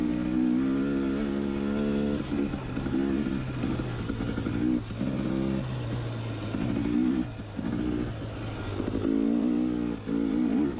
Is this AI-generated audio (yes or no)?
no